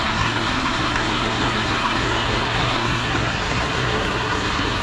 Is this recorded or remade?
remade